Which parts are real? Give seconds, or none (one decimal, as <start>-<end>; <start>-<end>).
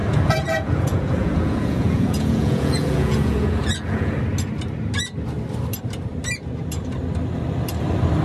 4.2-8.2